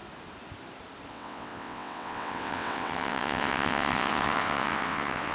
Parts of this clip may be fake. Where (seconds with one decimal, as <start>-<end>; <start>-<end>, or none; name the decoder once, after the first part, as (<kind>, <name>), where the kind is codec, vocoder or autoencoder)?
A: 1.1-5.3 (vocoder, WaveNeXt)